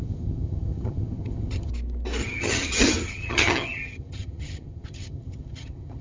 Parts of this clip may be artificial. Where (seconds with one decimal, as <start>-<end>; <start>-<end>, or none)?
0.0-1.7; 2.2-6.0